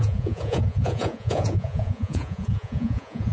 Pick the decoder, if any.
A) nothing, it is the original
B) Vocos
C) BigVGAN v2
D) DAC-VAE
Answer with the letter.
B